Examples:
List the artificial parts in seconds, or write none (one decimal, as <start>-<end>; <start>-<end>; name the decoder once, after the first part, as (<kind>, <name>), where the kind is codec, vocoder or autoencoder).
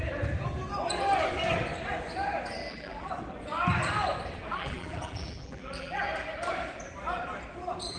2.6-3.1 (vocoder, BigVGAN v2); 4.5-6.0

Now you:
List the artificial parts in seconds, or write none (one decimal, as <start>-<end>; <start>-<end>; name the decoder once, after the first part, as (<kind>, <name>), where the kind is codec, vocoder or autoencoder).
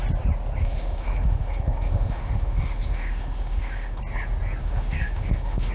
0.6-4.0 (autoencoder, DAC-VAE); 4.6-5.7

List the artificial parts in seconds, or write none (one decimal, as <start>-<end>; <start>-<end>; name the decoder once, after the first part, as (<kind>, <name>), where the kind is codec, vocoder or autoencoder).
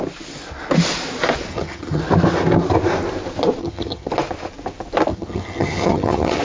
1.5-2.0 (vocoder, HiFi-GAN); 3.6-4.1; 5.1-6.4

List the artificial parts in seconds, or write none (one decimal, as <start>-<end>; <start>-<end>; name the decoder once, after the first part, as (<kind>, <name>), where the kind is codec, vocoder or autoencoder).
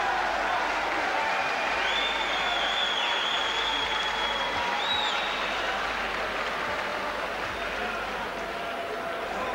none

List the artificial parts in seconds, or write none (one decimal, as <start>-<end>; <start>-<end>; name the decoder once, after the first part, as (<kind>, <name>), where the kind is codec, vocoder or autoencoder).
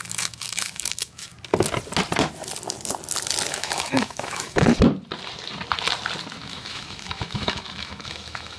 0.0-1.3 (autoencoder, DAC-VAE); 3.5-4.7; 6.4-8.6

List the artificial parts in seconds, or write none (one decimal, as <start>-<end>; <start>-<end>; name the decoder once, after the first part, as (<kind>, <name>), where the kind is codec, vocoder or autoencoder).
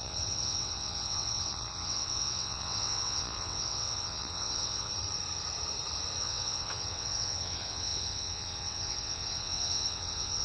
0.0-4.9 (vocoder, WaveNeXt); 6.2-10.4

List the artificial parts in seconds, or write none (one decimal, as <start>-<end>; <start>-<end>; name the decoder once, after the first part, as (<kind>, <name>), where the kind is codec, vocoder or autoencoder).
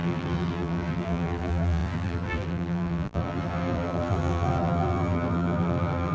0.0-6.1 (vocoder, BigVGAN v2)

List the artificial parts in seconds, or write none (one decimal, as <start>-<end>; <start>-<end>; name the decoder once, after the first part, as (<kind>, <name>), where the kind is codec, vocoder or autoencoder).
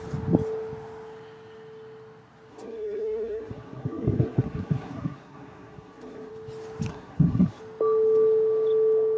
2.5-6.3 (codec, SNAC); 6.9-7.6